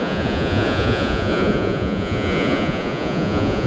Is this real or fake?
fake